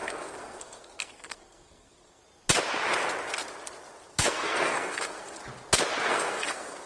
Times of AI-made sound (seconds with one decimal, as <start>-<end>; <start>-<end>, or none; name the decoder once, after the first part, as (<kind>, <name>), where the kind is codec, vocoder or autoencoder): 0.0-2.2 (codec, SNAC); 4.1-5.4; 6.0-6.9

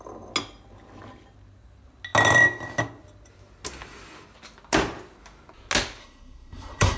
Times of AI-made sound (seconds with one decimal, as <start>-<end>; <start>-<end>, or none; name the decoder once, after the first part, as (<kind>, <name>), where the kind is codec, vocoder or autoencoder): 6.0-7.0 (codec, SNAC)

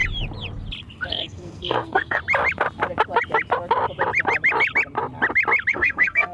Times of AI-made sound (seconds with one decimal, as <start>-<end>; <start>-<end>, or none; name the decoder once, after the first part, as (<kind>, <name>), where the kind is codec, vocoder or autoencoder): 0.9-2.2 (codec, SNAC); 5.7-6.3

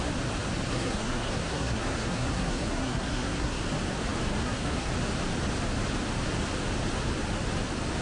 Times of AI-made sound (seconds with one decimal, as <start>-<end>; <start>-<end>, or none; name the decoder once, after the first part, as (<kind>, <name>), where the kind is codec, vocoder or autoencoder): 0.7-3.6 (codec, SNAC); 4.3-4.9